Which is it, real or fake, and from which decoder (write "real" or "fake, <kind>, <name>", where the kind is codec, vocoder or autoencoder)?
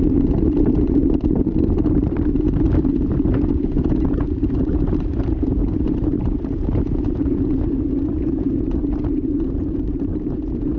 fake, vocoder, BigVGAN v2